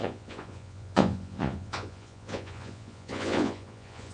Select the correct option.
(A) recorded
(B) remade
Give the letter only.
B